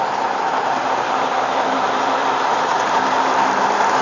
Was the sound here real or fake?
real